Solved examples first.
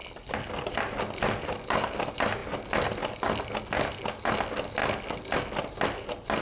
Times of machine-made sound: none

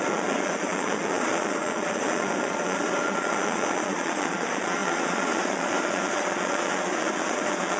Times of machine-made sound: 0.0-7.8 (vocoder, Vocos)

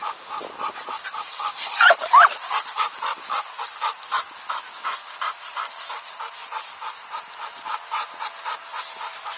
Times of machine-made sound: none

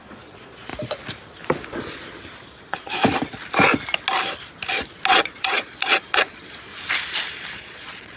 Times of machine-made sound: 0.0-0.7 (vocoder, Vocos); 2.6-3.0; 5.1-6.7; 7.5-8.2

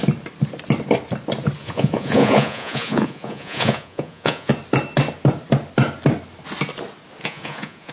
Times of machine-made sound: 1.6-4.5 (vocoder, Vocos); 7.2-7.9

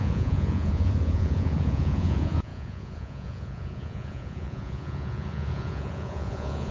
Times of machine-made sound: 0.0-6.7 (vocoder, Vocos)